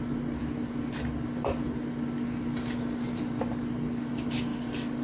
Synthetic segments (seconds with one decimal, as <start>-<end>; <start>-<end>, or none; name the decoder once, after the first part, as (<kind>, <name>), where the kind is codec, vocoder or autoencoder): none